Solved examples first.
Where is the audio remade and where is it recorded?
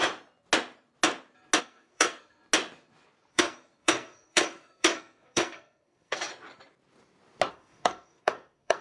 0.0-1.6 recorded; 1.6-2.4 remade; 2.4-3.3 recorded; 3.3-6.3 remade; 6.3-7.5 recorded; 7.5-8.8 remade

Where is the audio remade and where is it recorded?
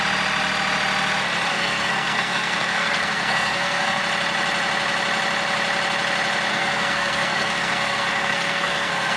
0.0-1.5 recorded; 1.5-4.0 remade; 4.0-6.5 recorded; 6.5-9.2 remade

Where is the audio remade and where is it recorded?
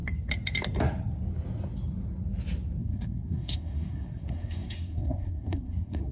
0.0-2.8 recorded; 2.8-6.1 remade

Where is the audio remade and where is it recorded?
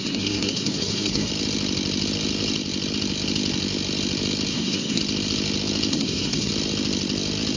0.0-1.3 remade; 1.3-4.5 recorded; 4.5-5.0 remade; 5.0-5.9 recorded; 5.9-6.5 remade; 6.5-7.6 recorded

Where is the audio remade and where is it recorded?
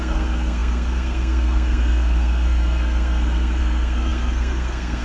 0.0-5.0 remade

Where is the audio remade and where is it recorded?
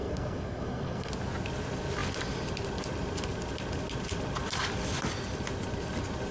0.0-1.1 remade; 1.1-6.3 recorded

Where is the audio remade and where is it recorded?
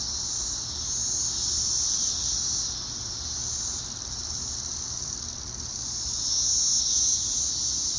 0.0-8.0 recorded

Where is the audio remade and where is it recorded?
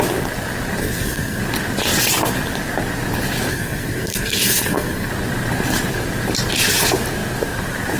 0.0-0.8 recorded; 0.8-1.4 remade; 1.4-3.5 recorded; 3.5-5.1 remade; 5.1-8.0 recorded